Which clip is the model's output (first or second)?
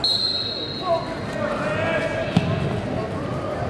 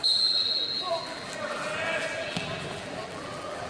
second